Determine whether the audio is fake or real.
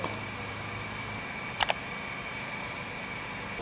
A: real